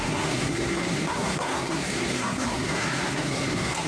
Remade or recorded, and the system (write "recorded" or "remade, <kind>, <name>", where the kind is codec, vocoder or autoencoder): remade, codec, SNAC